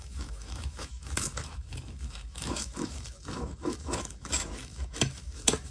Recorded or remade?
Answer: remade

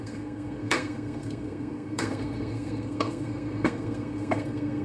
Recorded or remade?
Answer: remade